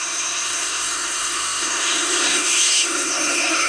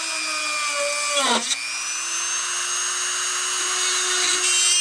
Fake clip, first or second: first